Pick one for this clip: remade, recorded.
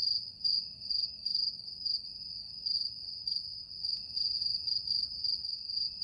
recorded